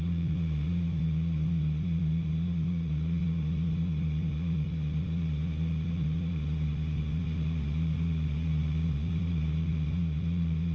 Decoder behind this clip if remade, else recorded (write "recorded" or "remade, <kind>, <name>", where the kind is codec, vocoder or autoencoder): remade, vocoder, Vocos